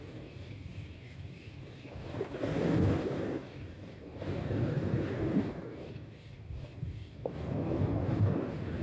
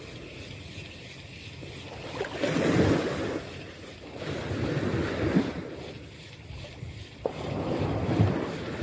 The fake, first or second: first